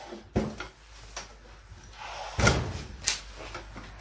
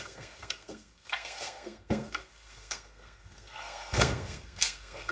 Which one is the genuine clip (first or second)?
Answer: first